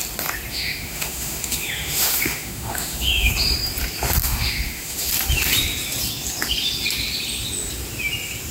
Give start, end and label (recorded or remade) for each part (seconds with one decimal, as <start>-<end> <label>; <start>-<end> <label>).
0.0-0.5 recorded; 0.5-3.3 remade; 3.3-4.2 recorded; 4.2-5.1 remade; 5.1-8.5 recorded

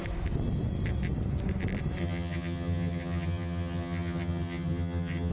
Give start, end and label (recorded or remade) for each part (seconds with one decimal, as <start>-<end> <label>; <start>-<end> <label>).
0.0-2.0 recorded; 2.0-5.3 remade